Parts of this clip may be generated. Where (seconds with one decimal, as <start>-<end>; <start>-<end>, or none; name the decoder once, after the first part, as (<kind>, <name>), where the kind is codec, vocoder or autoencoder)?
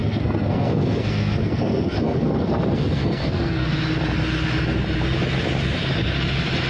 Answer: 0.0-3.7 (codec, SNAC)